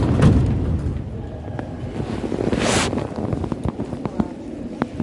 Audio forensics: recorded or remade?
recorded